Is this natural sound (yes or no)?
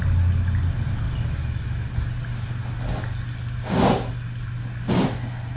yes